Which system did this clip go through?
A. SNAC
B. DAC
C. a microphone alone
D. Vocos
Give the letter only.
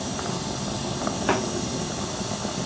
C